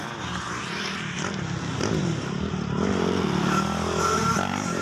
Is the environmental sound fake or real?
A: real